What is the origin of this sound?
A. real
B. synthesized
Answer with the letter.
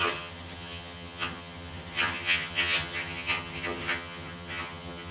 B